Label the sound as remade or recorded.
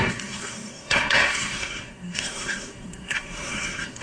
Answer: remade